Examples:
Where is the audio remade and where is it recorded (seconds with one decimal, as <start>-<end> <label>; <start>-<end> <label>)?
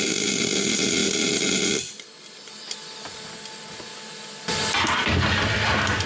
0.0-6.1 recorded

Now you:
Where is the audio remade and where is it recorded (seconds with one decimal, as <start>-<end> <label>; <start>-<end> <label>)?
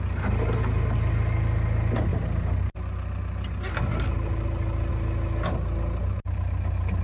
0.0-7.0 recorded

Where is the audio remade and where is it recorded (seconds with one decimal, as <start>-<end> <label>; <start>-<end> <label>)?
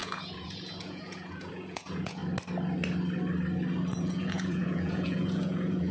0.0-2.2 remade; 2.2-4.0 recorded; 4.0-5.9 remade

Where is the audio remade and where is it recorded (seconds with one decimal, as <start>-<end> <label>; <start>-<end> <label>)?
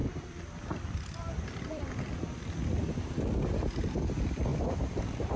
0.0-1.9 remade; 1.9-4.5 recorded; 4.5-5.0 remade; 5.0-5.4 recorded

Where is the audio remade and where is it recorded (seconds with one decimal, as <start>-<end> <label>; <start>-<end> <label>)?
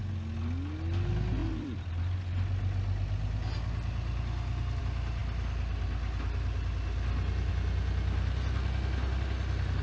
0.0-9.8 recorded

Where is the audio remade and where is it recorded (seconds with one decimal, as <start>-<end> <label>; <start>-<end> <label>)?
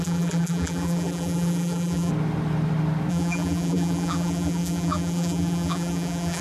0.0-2.1 remade; 2.1-3.1 recorded; 3.1-6.4 remade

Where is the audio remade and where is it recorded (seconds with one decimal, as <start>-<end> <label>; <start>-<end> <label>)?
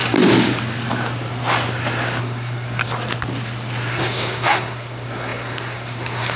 0.0-2.2 recorded; 2.2-2.8 remade; 2.8-3.9 recorded; 3.9-6.4 remade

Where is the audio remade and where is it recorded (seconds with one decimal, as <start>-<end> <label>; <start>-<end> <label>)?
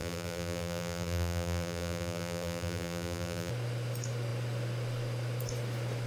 0.0-3.5 remade; 3.5-6.1 recorded